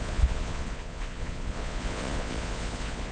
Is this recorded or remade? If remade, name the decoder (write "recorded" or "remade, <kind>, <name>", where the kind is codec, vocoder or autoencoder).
remade, vocoder, Vocos